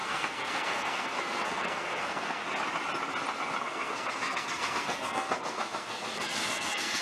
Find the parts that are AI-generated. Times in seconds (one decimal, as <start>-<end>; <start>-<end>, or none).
0.0-2.4; 3.6-7.0